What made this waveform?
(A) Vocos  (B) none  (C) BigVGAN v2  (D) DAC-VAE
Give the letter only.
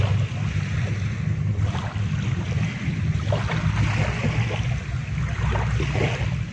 B